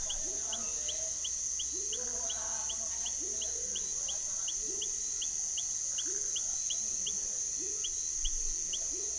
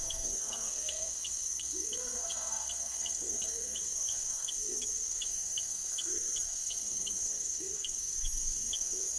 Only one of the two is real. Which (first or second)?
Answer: first